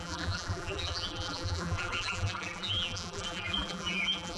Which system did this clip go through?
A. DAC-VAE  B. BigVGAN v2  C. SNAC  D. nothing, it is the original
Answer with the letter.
B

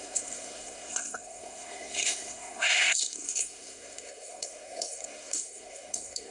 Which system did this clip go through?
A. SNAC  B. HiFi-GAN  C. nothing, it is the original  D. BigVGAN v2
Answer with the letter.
A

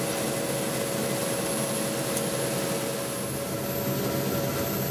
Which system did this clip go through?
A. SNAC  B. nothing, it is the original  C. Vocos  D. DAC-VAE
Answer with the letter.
B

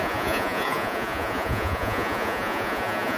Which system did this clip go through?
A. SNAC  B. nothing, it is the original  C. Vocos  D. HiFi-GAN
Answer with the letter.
C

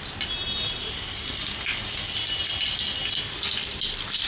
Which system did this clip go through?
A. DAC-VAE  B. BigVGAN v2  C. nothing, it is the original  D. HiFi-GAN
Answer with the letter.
C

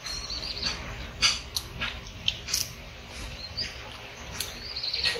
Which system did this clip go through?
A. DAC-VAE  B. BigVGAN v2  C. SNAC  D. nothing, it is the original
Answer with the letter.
D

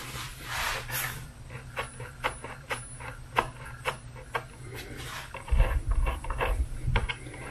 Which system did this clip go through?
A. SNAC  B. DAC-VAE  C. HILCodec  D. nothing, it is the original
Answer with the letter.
D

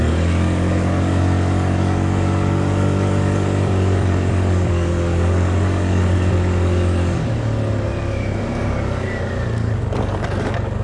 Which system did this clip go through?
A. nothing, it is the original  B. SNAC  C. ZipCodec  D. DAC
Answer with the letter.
D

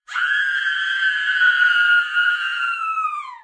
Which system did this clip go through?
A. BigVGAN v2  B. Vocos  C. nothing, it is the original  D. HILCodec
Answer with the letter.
B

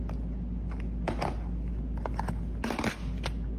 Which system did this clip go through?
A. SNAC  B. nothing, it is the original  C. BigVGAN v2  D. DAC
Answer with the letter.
B